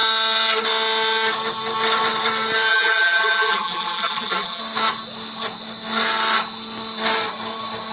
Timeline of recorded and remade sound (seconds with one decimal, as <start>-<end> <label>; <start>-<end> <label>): 0.0-2.7 recorded; 2.7-4.6 remade; 4.6-7.9 recorded